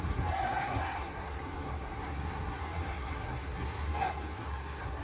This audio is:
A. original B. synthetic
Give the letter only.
B